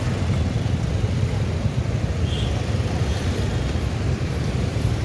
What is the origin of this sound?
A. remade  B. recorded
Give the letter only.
A